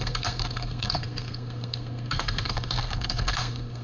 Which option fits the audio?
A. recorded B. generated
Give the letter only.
B